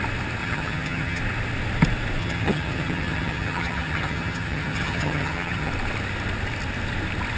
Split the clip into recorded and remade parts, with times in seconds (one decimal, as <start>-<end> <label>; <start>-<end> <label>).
0.0-0.4 recorded; 0.4-1.2 remade; 1.2-2.2 recorded; 2.2-5.7 remade; 5.7-7.4 recorded